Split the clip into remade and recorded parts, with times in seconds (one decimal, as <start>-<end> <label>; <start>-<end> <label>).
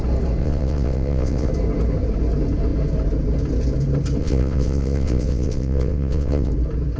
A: 0.0-0.4 recorded; 0.4-1.5 remade; 1.5-4.2 recorded; 4.2-6.5 remade; 6.5-7.0 recorded